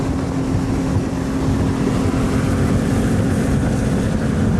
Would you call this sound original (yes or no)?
yes